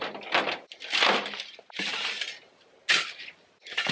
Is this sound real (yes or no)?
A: yes